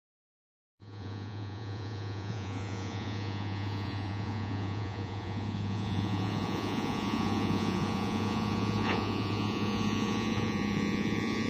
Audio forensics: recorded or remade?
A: remade